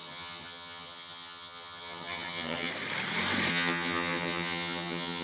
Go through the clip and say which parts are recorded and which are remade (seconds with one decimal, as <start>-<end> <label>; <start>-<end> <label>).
0.0-2.7 remade; 2.7-3.5 recorded; 3.5-5.2 remade